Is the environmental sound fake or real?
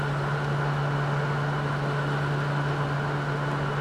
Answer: real